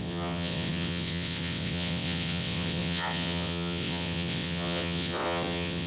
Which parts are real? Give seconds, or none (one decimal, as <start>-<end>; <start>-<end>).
none